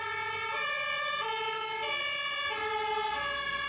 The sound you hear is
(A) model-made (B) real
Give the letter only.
B